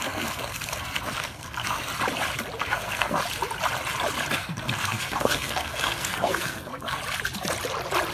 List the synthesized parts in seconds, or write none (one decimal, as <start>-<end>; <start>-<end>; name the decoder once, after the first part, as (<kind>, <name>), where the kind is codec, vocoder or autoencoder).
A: 0.0-1.9 (codec, SNAC); 2.6-3.2; 4.3-7.0